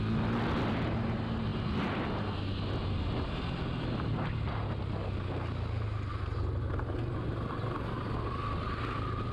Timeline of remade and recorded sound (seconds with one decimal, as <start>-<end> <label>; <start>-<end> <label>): 0.0-1.5 recorded; 1.5-2.1 remade; 2.1-9.3 recorded